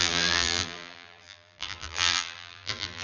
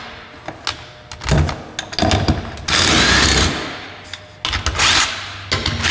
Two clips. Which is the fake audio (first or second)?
first